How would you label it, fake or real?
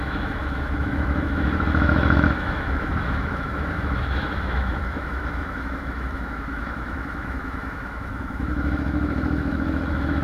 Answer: fake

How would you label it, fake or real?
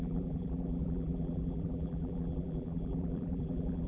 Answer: fake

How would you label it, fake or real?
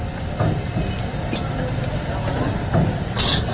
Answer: real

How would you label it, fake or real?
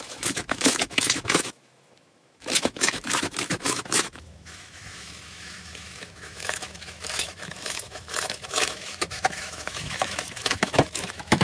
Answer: fake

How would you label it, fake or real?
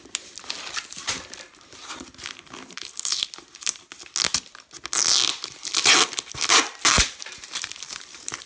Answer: real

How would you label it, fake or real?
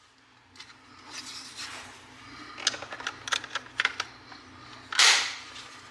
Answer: real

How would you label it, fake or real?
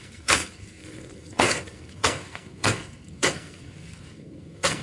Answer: fake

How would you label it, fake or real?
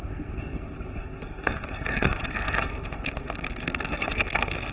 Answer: fake